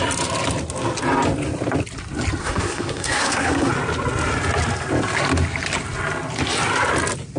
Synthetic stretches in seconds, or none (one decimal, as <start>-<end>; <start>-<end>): 2.4-3.7